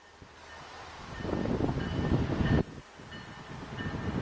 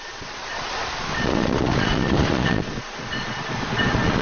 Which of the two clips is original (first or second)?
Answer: first